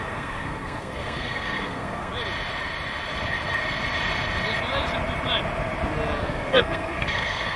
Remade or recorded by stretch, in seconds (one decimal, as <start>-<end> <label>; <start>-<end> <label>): 0.0-2.1 remade; 2.1-6.2 recorded; 6.2-7.6 remade